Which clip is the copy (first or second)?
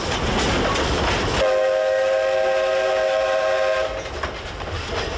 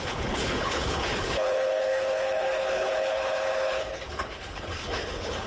second